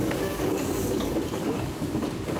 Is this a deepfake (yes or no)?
yes